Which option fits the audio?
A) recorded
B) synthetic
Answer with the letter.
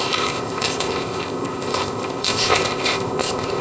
B